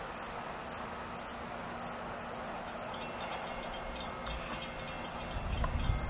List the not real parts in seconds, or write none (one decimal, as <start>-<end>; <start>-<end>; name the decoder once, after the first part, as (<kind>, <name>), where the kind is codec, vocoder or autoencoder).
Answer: none